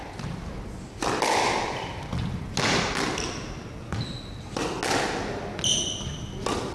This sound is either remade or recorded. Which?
recorded